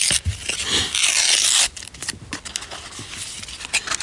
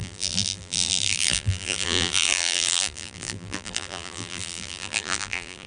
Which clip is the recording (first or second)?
first